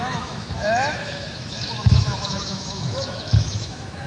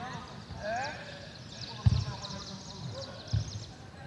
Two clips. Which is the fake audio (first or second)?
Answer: first